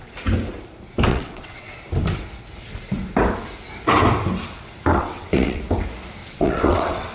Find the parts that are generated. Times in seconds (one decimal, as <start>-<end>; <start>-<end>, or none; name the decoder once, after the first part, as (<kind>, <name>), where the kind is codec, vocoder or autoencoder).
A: 1.1-1.7 (vocoder, WaveNeXt); 4.9-5.6; 6.2-7.1